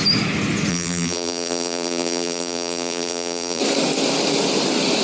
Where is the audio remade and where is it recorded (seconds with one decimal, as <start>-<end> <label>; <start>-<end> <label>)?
0.0-0.7 recorded; 0.7-3.6 remade; 3.6-5.0 recorded